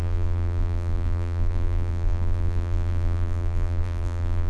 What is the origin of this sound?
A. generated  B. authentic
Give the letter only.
A